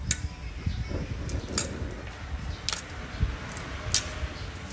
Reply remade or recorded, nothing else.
recorded